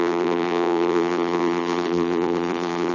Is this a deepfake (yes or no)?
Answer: yes